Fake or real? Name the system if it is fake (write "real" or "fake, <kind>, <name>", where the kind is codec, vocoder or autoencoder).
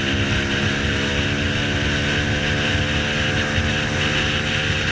real